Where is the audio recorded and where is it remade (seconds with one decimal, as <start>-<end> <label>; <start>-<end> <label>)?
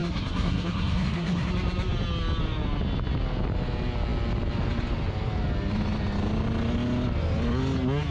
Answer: 0.0-1.5 remade; 1.5-8.1 recorded